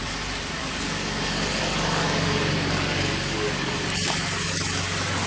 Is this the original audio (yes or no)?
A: no